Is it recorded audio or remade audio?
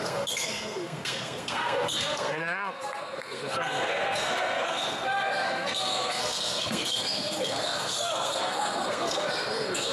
remade